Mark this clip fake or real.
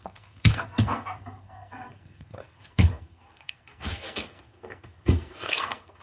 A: fake